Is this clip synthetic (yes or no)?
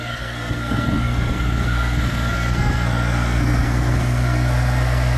yes